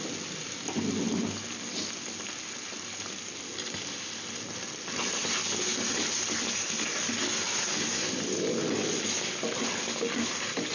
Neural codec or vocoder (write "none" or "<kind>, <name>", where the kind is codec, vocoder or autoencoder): none